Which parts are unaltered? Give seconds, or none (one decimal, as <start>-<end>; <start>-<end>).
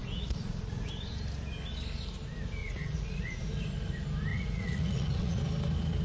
0.9-2.6; 3.4-4.3; 5.4-6.0